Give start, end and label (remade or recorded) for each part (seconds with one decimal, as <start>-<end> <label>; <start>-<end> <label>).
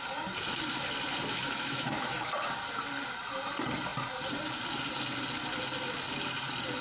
0.0-1.3 recorded; 1.3-2.3 remade; 2.3-6.8 recorded